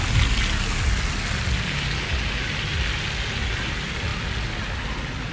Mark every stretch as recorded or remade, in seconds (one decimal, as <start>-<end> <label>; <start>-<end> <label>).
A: 0.0-5.3 recorded